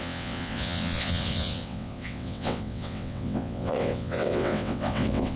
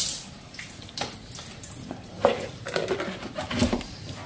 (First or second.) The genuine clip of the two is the second